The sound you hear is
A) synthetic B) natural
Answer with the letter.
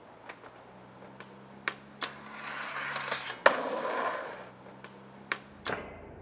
B